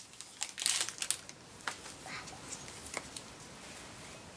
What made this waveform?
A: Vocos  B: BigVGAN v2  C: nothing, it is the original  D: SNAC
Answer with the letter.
C